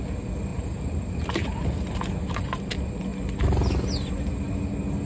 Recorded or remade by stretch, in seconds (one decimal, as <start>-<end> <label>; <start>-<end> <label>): 0.0-0.5 recorded; 0.5-1.6 remade; 1.6-2.2 recorded; 2.2-2.7 remade; 2.7-5.1 recorded